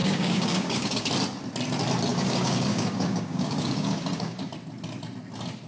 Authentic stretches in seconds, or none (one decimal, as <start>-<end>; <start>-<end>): 1.1-2.1; 4.5-5.7